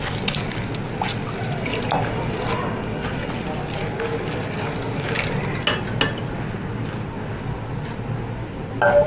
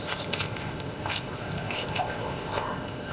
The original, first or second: first